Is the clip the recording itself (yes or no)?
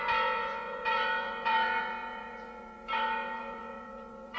no